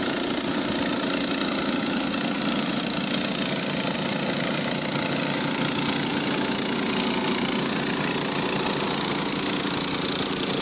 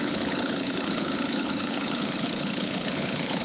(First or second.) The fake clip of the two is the second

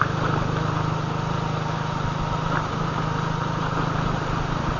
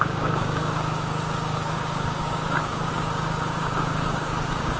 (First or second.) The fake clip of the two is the second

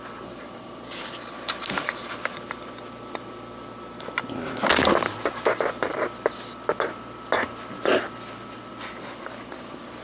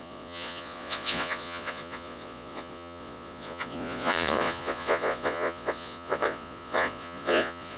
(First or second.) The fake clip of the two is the second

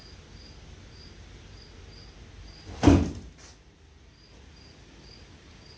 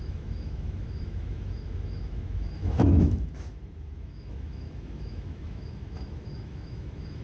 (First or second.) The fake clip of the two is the second